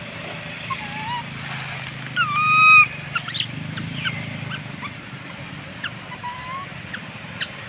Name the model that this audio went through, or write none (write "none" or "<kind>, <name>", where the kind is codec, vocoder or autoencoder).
none